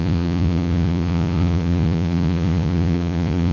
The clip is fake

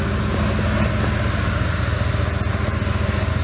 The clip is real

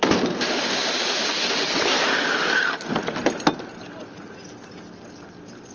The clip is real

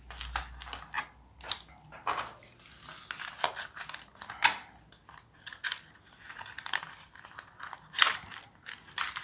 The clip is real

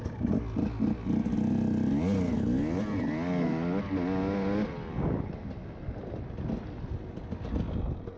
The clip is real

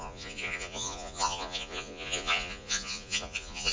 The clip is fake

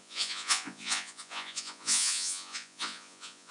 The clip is fake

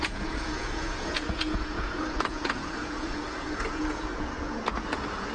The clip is fake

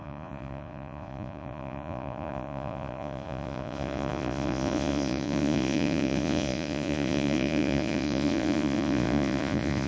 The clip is fake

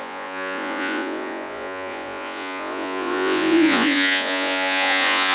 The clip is fake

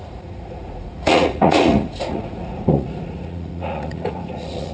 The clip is fake